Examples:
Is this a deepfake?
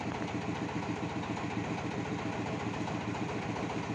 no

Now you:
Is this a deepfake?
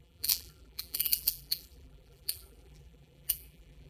yes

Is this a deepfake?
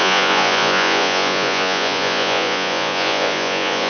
yes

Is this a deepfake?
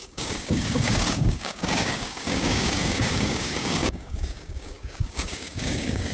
yes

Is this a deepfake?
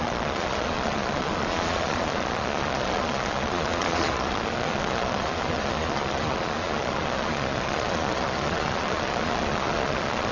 yes